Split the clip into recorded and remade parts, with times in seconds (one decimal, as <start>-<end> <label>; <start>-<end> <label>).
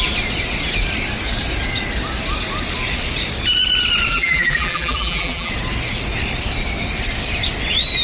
0.0-4.1 recorded; 4.1-5.5 remade; 5.5-8.0 recorded